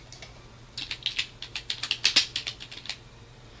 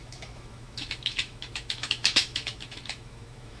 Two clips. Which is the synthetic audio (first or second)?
second